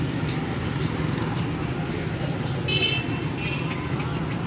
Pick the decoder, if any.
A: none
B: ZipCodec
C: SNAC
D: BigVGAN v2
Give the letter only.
A